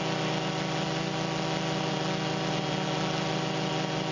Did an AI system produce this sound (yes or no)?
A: no